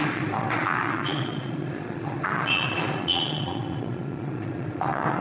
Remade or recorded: remade